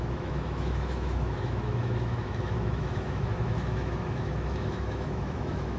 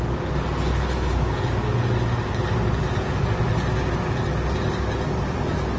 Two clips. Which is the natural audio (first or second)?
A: second